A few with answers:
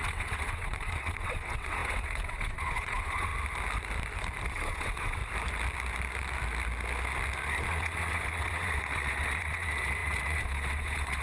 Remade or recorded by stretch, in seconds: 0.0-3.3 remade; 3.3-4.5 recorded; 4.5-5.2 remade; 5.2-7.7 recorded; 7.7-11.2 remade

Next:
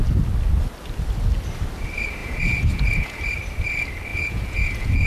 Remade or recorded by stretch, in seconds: 0.0-2.2 recorded; 2.2-3.2 remade; 3.2-4.1 recorded; 4.1-5.1 remade

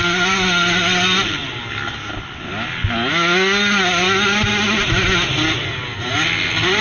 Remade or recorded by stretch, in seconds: 0.0-6.8 recorded

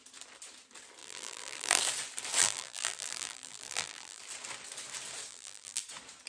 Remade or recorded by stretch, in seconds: 0.0-1.0 recorded; 1.0-1.8 remade; 1.8-2.4 recorded; 2.4-4.2 remade; 4.2-5.3 recorded; 5.3-5.8 remade; 5.8-6.3 recorded

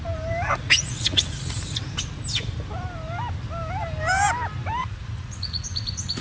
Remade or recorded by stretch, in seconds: 0.0-0.6 recorded; 0.6-1.7 remade; 1.7-4.8 recorded; 4.8-6.2 remade

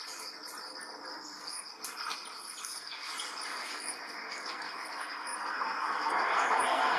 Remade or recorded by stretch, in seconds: 0.0-1.1 recorded; 1.1-1.7 remade; 1.7-2.6 recorded; 2.6-3.1 remade; 3.1-3.5 recorded; 3.5-7.0 remade

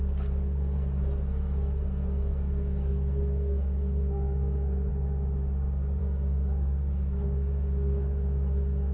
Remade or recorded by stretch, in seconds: 0.0-4.9 remade; 4.9-6.0 recorded; 6.0-8.9 remade

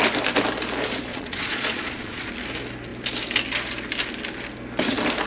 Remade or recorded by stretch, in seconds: 0.0-1.1 recorded; 1.1-2.3 remade; 2.3-5.3 recorded